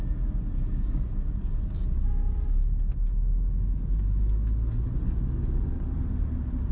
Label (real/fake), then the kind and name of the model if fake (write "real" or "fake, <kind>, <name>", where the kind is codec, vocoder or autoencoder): real